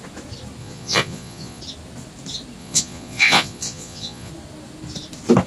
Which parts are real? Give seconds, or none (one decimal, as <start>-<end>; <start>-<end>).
0.0-0.6; 1.6-2.6; 4.3-5.5